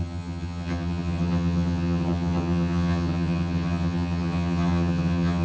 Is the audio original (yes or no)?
no